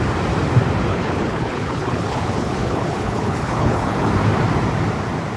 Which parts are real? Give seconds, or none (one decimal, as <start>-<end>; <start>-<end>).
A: 0.0-0.9; 4.1-5.4

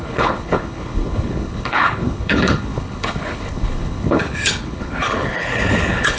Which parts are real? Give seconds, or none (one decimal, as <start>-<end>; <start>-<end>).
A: none

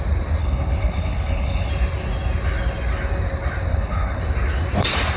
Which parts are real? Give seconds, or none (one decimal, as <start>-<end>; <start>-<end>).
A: 0.0-0.4; 1.7-3.7; 4.2-5.2

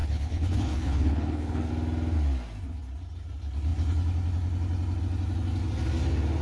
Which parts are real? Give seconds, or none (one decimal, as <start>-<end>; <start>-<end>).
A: 1.7-6.4

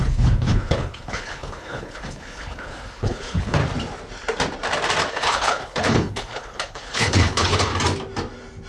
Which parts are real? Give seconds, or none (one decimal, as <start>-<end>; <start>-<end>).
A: 3.6-5.1; 7.7-8.7

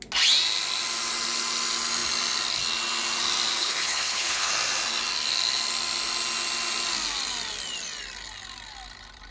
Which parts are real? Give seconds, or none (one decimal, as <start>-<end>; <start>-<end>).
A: 0.0-3.6; 4.5-9.3